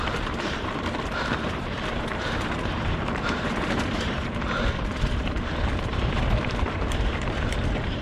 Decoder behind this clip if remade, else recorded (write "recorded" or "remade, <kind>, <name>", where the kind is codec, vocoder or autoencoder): remade, vocoder, BigVGAN v2